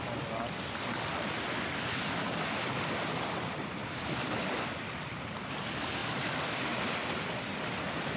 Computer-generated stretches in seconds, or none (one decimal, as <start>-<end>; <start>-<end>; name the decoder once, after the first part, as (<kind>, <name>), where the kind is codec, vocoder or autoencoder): none